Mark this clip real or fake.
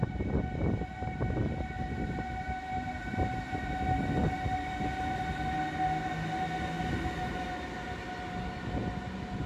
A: real